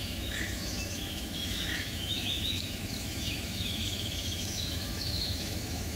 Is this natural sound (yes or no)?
no